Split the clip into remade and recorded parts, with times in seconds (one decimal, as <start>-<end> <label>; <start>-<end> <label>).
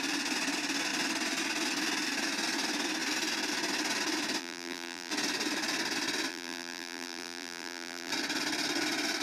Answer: 0.0-4.4 recorded; 4.4-5.1 remade; 5.1-6.3 recorded; 6.3-8.1 remade; 8.1-9.2 recorded